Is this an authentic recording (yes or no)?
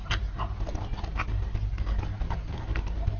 yes